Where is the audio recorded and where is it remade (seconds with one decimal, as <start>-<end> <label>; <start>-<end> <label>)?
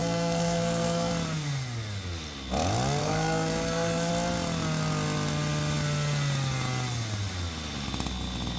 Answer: 0.0-1.1 remade; 1.1-3.0 recorded; 3.0-4.1 remade; 4.1-8.6 recorded